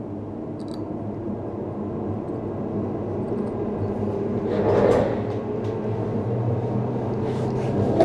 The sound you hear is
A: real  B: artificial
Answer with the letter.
A